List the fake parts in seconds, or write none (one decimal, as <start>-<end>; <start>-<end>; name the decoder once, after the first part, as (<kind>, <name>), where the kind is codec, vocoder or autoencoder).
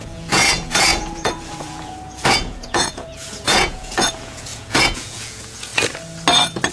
0.0-5.7 (vocoder, Vocos)